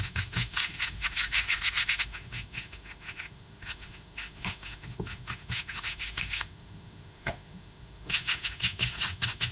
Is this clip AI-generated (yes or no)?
yes